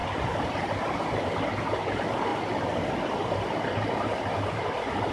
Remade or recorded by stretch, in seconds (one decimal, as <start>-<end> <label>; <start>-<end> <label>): 0.0-1.9 remade; 1.9-5.1 recorded